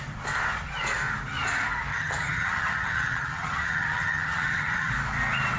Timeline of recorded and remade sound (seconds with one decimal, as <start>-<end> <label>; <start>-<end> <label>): 0.0-1.9 recorded; 1.9-4.9 remade; 4.9-5.6 recorded